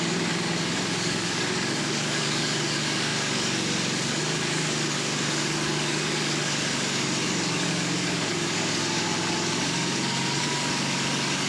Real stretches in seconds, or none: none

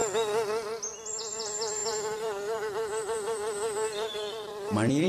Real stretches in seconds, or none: 0.0-1.1

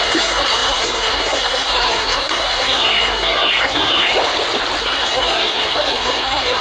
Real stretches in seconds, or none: 4.1-4.8

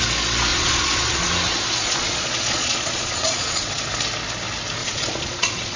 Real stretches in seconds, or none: 0.0-0.5; 1.3-1.8; 3.8-4.8